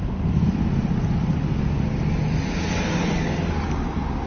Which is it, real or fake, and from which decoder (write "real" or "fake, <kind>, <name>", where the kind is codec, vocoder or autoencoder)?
real